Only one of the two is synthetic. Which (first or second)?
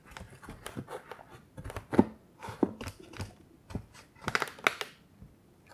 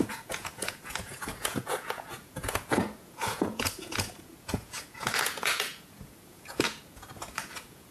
second